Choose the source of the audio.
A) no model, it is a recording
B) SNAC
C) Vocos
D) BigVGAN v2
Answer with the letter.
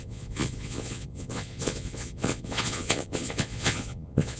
C